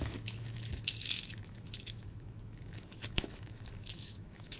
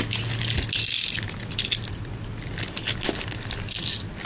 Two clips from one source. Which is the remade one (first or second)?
first